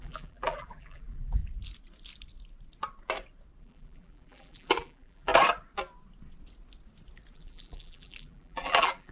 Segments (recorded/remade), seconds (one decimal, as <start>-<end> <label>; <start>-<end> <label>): 0.0-1.4 remade; 1.4-3.6 recorded; 3.6-5.3 remade; 5.3-7.3 recorded; 7.3-9.1 remade